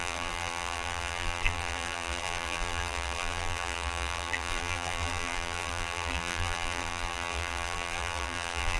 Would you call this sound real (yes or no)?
no